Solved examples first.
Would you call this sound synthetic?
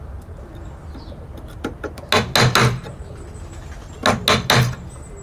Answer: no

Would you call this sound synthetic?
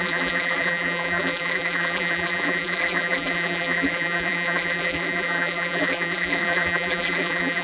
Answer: yes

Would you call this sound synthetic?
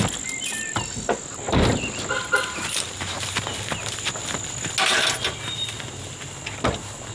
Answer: no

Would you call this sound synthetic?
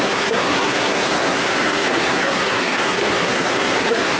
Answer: yes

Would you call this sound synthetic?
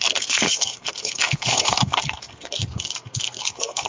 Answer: yes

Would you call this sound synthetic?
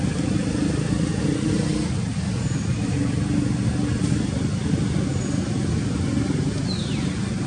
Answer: no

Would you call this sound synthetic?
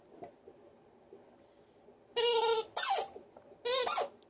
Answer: no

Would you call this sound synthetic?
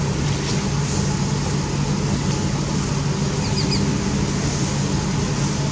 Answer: no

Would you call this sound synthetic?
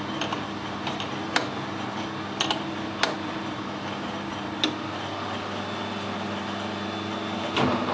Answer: no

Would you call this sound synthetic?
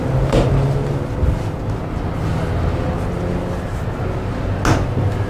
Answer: no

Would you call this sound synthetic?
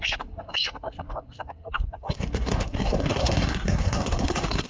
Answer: yes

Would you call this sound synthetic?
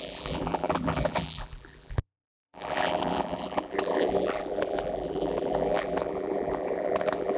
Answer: yes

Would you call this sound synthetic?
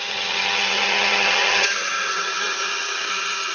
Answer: yes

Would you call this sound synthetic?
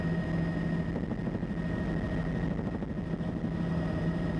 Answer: no